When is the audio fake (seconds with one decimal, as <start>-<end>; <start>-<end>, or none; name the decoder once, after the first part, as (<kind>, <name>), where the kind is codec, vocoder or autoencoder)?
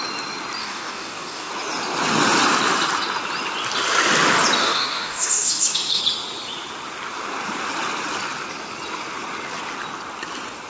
0.6-1.5 (codec, DAC); 4.6-6.0